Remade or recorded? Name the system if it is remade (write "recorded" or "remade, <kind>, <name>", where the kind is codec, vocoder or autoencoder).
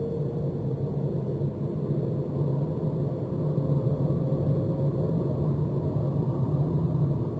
recorded